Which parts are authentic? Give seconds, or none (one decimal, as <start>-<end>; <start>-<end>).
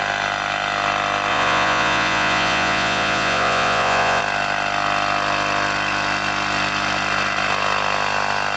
0.0-1.3; 4.2-8.6